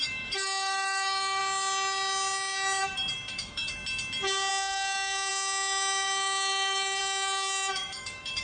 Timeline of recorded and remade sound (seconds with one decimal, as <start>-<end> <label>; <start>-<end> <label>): 0.0-1.4 remade; 1.4-2.8 recorded; 2.8-3.8 remade; 3.8-4.5 recorded; 4.5-8.4 remade